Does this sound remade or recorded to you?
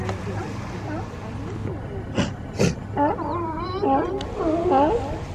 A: recorded